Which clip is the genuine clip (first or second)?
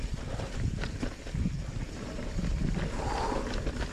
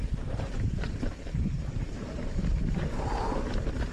first